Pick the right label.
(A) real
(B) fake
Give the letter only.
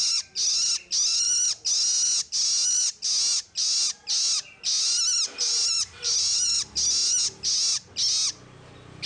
A